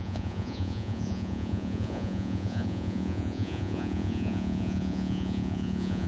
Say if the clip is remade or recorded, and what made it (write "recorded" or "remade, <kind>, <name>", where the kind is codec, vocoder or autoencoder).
remade, vocoder, Vocos